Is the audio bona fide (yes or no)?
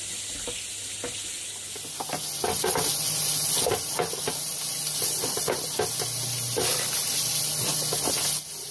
yes